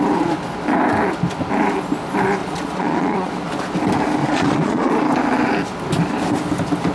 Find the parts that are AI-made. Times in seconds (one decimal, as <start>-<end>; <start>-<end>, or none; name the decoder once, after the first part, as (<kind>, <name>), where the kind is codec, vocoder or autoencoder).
2.4-3.3 (vocoder, Vocos); 4.2-4.9